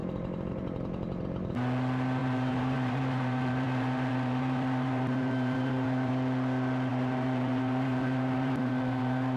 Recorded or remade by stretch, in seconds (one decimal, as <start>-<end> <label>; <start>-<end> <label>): 0.0-1.5 remade; 1.5-2.2 recorded; 2.2-6.1 remade; 6.1-6.9 recorded; 6.9-9.4 remade